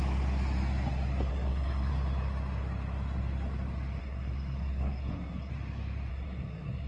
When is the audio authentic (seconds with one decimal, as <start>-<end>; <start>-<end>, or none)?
0.0-1.3; 1.9-4.0; 5.5-6.1